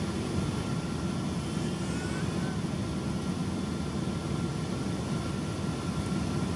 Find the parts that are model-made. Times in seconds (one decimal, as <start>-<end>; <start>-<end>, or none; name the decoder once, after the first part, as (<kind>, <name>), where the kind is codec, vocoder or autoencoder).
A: none